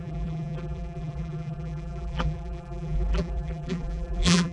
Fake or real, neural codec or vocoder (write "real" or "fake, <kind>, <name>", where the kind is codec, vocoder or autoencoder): fake, vocoder, BigVGAN v2